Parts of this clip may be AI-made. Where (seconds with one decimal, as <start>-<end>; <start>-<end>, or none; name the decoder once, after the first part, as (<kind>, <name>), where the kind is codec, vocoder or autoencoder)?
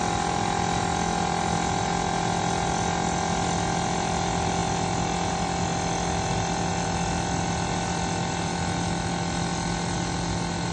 none